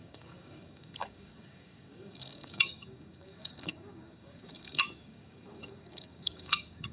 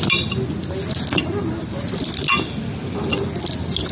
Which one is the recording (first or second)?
second